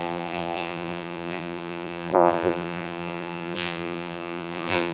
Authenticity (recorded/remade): remade